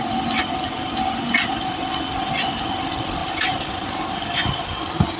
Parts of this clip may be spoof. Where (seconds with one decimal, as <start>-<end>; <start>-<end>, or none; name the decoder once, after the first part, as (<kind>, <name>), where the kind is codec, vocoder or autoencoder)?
3.2-4.1 (vocoder, BigVGAN v2)